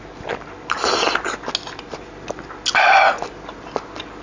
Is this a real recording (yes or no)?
yes